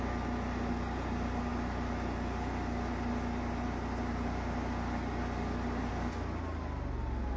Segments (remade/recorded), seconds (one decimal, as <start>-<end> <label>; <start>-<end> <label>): 0.0-7.4 recorded